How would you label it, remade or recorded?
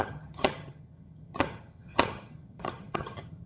remade